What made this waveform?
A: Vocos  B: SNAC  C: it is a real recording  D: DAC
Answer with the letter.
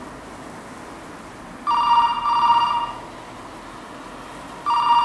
C